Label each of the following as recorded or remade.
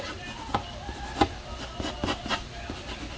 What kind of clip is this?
recorded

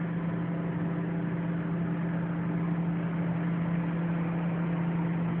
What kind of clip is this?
recorded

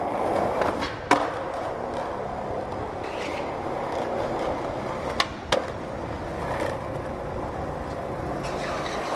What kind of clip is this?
recorded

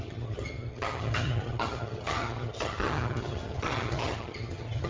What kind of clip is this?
remade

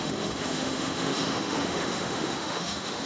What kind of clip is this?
remade